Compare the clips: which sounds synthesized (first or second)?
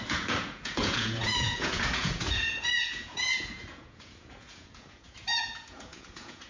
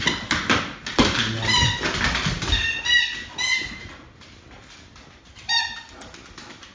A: first